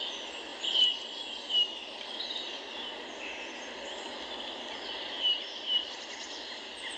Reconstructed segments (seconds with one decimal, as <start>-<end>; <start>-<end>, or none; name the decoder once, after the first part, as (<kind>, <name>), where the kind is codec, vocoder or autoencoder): none